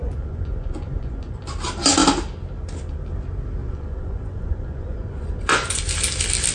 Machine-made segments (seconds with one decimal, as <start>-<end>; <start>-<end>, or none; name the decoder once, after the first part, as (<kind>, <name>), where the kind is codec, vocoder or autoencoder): 0.0-1.4 (vocoder, Vocos); 3.6-5.8